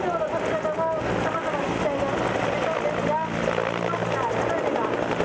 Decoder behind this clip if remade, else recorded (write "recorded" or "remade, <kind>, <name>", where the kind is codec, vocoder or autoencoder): recorded